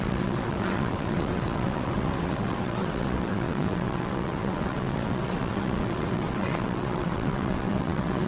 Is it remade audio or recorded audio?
remade